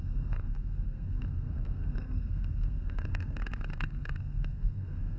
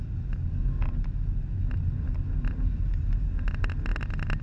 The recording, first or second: second